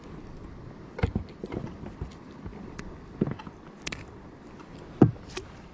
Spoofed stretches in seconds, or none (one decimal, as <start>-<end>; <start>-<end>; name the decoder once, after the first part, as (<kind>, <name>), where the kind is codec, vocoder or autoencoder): none